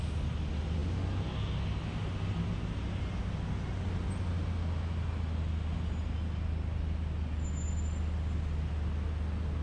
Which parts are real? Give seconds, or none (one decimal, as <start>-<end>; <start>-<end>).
0.0-9.6

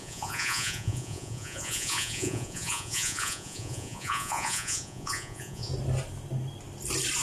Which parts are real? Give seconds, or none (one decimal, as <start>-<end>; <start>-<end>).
5.7-7.2